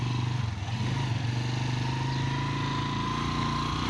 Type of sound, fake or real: real